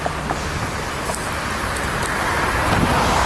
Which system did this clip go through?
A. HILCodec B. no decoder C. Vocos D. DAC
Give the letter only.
B